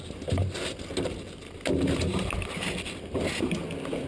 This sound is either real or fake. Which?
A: real